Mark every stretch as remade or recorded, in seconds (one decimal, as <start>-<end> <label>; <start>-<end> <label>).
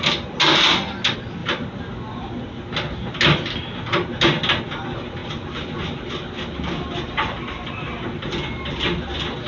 0.0-9.5 recorded